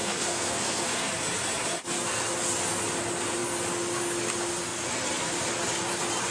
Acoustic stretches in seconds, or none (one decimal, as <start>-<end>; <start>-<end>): 1.1-6.3